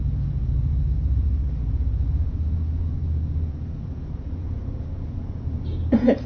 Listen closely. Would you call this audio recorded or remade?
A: remade